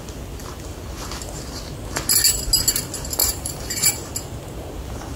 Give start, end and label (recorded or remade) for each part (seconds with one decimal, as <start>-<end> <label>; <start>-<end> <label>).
0.0-3.2 recorded; 3.2-3.9 remade; 3.9-5.2 recorded